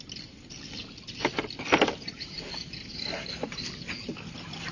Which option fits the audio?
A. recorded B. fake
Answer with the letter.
A